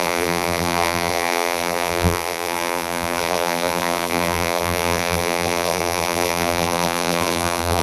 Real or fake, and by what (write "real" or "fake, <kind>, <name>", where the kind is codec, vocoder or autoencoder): fake, vocoder, BigVGAN v2